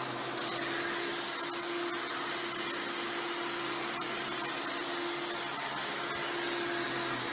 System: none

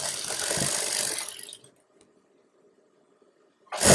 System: none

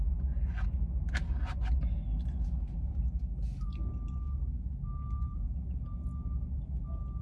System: none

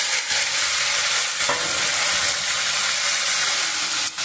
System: none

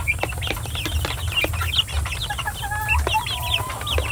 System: none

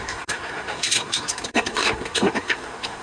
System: codec, SNAC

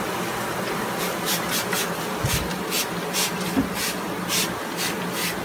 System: none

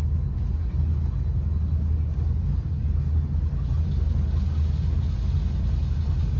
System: none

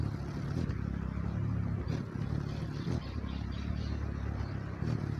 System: none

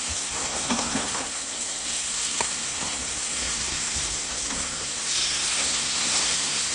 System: codec, SNAC